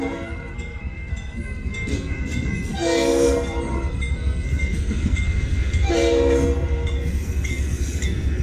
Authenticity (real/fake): fake